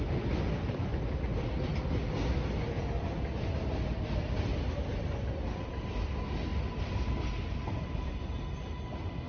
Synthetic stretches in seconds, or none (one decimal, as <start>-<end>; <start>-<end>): none